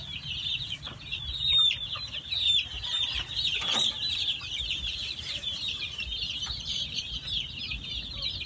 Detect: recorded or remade remade